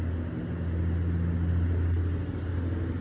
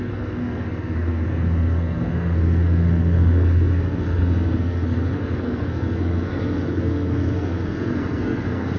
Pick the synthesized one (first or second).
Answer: second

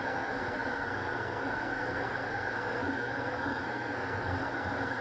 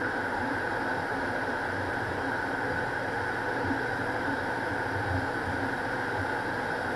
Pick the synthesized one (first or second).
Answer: first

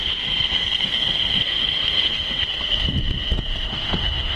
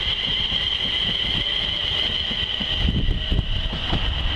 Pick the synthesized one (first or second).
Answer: first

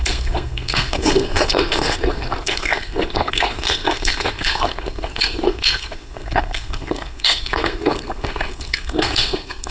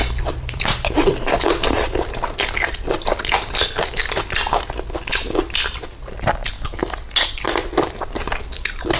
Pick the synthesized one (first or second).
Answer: first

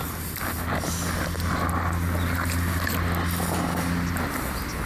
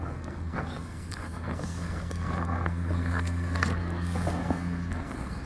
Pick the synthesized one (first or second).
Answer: second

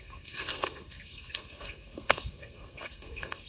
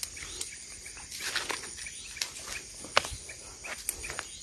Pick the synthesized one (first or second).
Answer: first